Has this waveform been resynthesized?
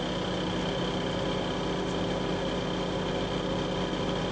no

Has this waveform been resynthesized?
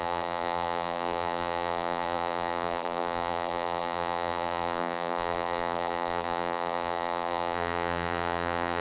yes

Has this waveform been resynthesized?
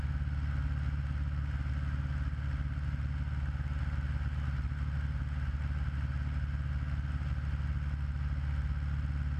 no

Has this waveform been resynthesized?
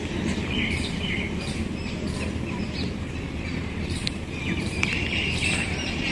yes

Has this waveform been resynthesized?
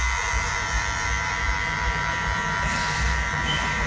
yes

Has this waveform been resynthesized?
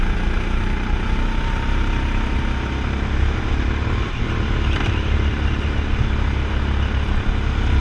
no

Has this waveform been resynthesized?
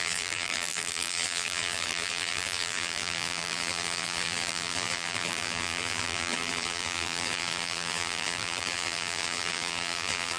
yes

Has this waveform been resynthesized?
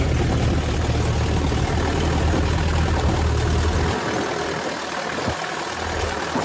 no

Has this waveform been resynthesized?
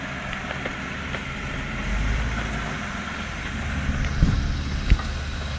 no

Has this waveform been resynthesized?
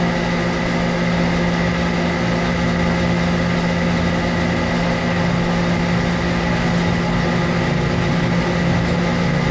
no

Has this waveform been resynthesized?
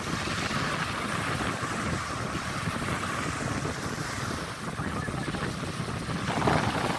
no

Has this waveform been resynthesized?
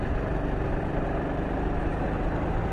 no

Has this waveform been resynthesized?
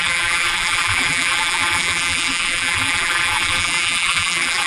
yes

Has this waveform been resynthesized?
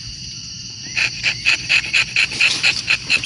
no